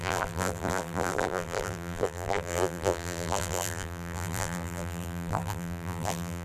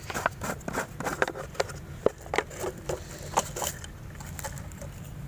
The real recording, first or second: second